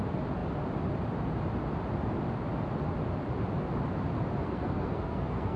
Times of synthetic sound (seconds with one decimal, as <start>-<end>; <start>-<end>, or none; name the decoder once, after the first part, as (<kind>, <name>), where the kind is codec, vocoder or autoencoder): 4.4-5.6 (codec, SNAC)